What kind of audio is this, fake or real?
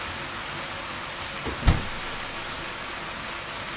real